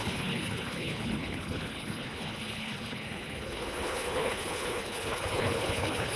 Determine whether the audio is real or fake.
fake